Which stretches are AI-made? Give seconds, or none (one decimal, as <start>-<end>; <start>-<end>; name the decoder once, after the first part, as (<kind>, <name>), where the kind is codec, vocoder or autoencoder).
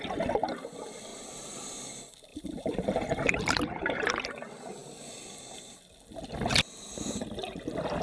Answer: 1.1-1.7 (vocoder, BigVGAN v2); 2.3-4.0